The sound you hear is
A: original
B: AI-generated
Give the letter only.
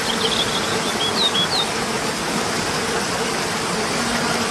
A